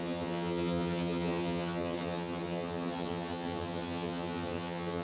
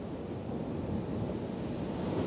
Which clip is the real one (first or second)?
second